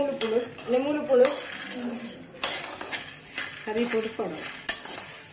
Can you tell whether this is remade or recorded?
recorded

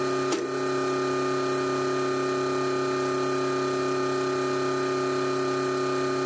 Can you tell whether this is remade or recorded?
recorded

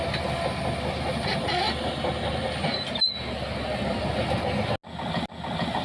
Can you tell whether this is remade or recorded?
recorded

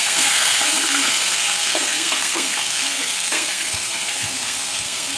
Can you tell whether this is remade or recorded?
remade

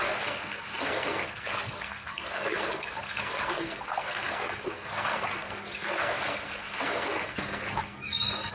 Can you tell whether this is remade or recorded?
remade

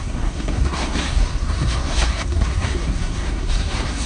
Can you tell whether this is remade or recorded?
remade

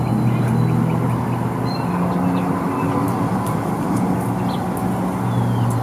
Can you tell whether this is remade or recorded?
recorded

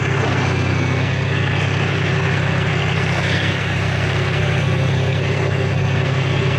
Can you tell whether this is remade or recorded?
remade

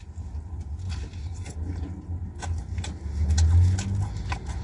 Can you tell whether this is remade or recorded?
recorded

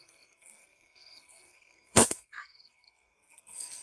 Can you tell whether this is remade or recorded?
remade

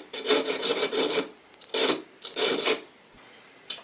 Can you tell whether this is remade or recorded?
recorded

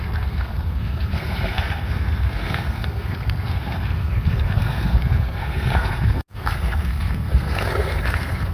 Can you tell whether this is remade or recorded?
remade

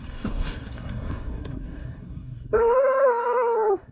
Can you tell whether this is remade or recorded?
remade